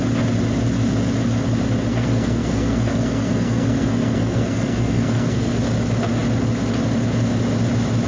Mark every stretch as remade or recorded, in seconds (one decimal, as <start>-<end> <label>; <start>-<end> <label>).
0.0-1.9 recorded; 1.9-5.6 remade; 5.6-8.1 recorded